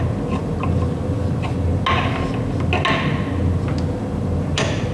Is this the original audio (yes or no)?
yes